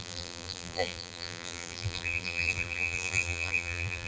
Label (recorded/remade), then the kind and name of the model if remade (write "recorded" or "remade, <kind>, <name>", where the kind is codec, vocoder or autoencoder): remade, vocoder, BigVGAN v2